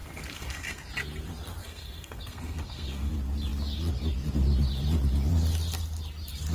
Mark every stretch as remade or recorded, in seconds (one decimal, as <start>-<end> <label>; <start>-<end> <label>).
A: 0.0-0.9 remade; 0.9-1.6 recorded; 1.6-3.1 remade; 3.1-6.5 recorded